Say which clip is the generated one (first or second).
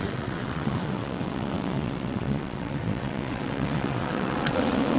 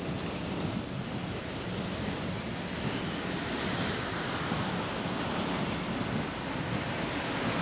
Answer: first